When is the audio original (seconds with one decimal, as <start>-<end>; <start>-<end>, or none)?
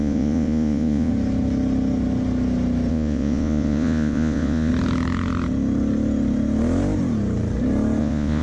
1.1-2.9; 4.7-8.0